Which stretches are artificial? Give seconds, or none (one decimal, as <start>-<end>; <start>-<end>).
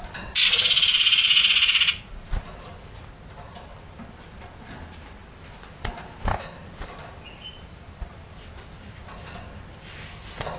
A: none